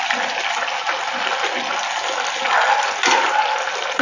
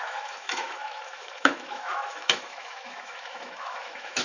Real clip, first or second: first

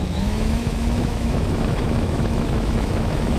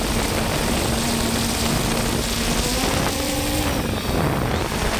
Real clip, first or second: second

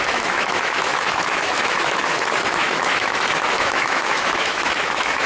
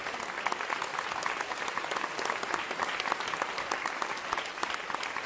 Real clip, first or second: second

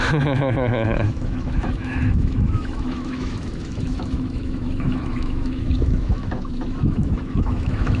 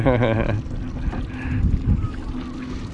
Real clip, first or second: second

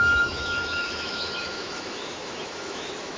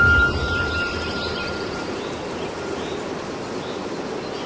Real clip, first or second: second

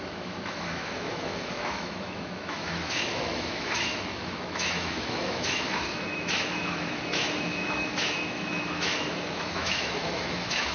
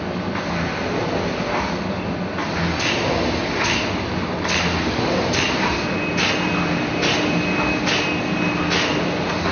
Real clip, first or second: second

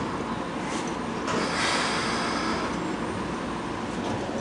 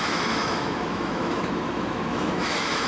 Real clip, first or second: first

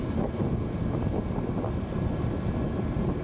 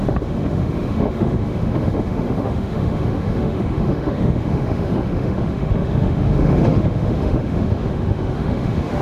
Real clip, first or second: first